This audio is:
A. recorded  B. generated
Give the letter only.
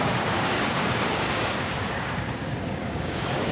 B